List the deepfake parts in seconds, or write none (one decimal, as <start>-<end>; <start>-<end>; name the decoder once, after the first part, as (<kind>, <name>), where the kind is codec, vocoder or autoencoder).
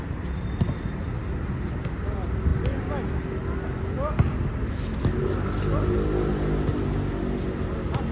none